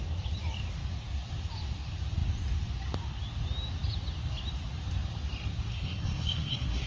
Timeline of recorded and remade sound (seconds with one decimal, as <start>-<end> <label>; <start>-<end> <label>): 0.0-5.7 recorded; 5.7-6.9 remade